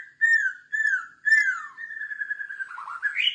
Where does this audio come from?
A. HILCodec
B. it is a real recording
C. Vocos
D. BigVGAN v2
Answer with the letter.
B